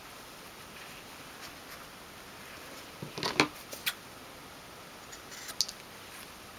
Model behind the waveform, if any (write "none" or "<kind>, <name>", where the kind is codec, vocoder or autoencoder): none